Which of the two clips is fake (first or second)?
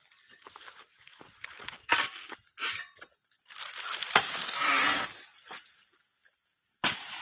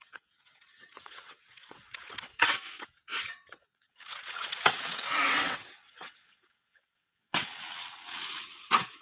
second